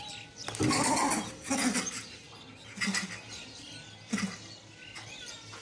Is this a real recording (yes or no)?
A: yes